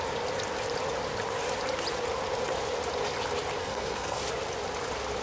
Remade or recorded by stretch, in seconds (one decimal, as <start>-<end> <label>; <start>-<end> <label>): 0.0-3.6 recorded; 3.6-4.2 remade; 4.2-5.2 recorded